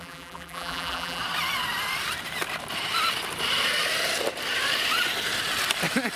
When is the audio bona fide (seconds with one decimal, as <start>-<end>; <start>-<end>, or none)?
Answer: 1.2-6.2